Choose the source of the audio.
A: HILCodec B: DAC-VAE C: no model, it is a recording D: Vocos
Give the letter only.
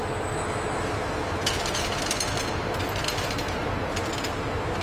C